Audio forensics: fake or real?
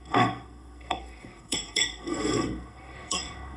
fake